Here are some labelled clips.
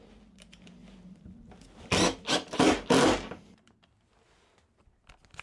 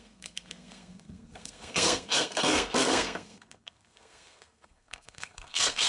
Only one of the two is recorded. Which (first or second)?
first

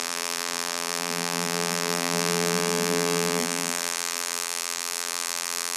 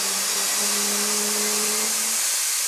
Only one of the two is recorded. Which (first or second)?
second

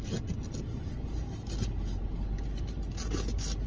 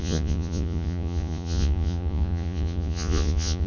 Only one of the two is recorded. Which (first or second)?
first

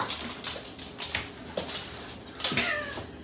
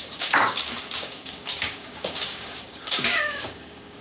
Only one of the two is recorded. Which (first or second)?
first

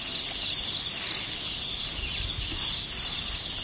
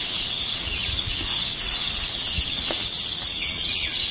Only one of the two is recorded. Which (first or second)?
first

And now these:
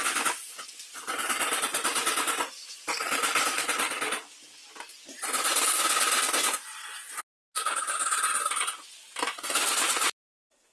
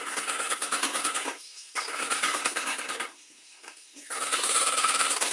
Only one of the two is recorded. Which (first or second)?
first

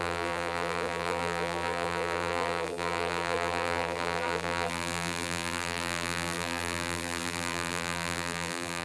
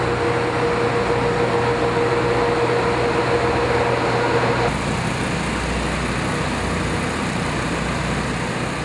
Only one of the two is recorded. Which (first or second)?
second